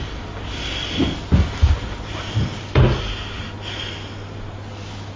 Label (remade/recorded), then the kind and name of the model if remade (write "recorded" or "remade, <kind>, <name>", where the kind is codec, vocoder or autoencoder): recorded